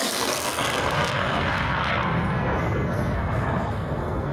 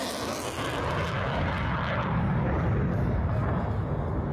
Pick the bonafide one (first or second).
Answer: second